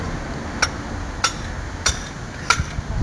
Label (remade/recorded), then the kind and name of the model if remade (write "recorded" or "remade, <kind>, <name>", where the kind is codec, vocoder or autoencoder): recorded